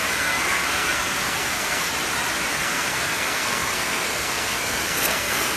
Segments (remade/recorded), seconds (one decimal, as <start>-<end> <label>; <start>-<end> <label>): 0.0-1.9 remade; 1.9-2.5 recorded; 2.5-5.6 remade